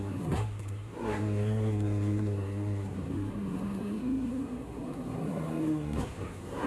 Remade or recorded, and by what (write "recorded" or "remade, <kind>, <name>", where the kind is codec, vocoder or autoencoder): remade, codec, SNAC